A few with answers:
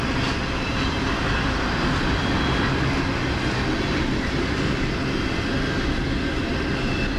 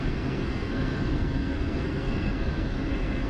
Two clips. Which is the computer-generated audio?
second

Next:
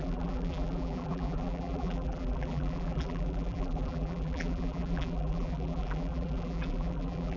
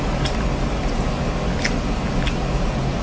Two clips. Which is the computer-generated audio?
first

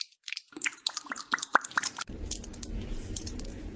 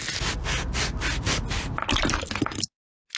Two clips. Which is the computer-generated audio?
first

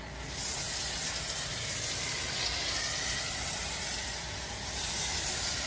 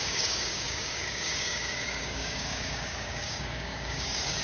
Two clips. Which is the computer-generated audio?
second